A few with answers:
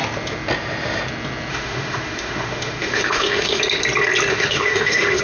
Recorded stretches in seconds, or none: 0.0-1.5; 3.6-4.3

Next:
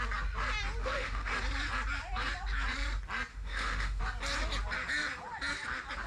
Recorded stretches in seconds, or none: 0.0-0.8; 1.3-3.3; 4.0-6.1

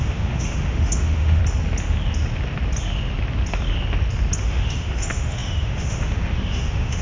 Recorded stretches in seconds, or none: 1.4-4.4

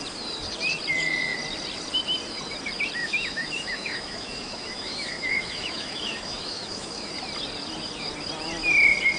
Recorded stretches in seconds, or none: 0.0-3.0; 7.1-9.2